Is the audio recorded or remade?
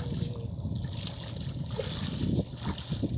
recorded